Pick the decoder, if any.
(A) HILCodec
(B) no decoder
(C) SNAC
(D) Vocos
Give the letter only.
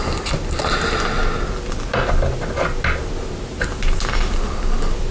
B